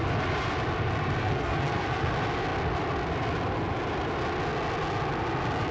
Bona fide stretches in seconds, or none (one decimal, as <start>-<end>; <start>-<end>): 0.0-1.2; 2.1-5.7